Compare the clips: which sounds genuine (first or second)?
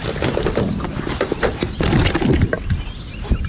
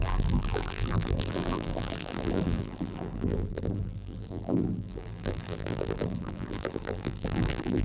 first